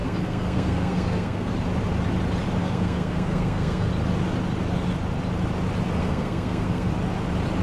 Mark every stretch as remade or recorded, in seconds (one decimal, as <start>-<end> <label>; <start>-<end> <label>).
0.0-1.5 remade; 1.5-2.6 recorded; 2.6-3.9 remade; 3.9-6.0 recorded; 6.0-6.9 remade; 6.9-7.6 recorded